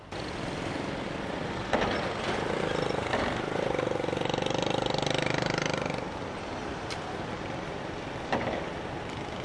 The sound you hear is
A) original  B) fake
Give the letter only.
A